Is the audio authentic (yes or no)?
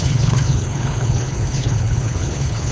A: no